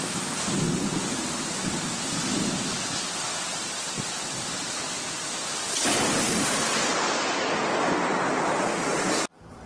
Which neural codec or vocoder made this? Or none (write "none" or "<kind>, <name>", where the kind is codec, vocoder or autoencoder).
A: none